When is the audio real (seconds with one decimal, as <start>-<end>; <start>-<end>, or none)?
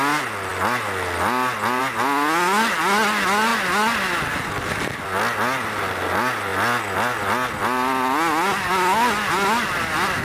0.0-10.2